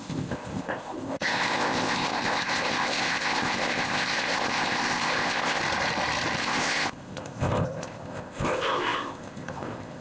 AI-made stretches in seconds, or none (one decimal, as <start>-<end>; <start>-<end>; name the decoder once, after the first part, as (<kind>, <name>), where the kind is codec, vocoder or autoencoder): 0.0-5.6 (codec, ZipCodec); 6.4-10.0